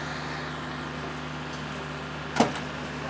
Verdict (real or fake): real